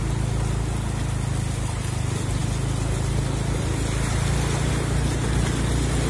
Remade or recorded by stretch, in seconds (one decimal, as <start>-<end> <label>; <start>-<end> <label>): 0.0-6.1 recorded

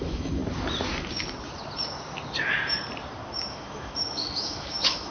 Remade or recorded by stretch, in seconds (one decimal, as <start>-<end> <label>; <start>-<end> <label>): 0.0-0.4 remade; 0.4-3.5 recorded; 3.5-5.1 remade